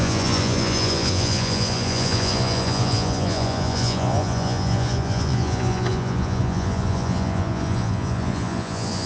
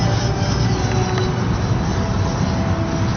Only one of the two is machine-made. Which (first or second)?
first